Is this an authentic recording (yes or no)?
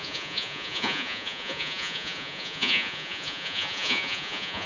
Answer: no